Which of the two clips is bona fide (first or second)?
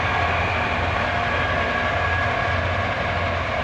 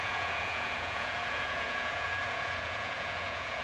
first